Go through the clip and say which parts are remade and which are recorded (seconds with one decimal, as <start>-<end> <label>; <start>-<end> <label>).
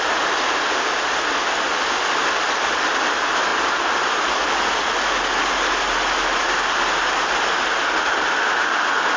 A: 0.0-9.2 recorded